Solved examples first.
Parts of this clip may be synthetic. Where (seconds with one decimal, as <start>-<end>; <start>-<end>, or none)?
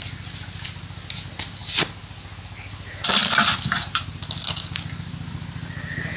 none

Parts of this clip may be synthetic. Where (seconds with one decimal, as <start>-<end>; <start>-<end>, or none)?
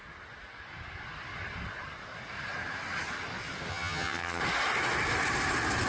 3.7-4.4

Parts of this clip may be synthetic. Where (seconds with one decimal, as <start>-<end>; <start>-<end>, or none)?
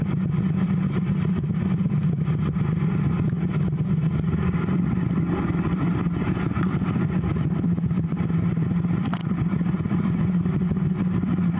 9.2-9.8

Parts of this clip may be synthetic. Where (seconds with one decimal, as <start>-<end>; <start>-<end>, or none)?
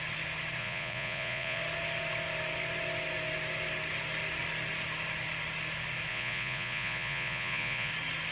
0.6-1.6; 6.1-7.9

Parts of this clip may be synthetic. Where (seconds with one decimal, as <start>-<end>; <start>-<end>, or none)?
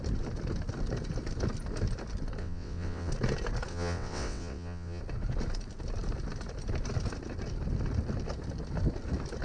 2.4-3.1; 3.7-5.0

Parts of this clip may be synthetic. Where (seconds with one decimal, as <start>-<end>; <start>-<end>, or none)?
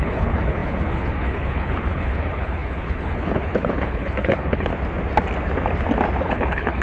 0.0-4.7; 6.2-6.8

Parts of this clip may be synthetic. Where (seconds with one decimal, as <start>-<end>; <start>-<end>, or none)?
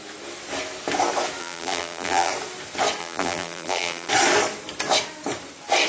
1.4-2.3; 3.0-4.1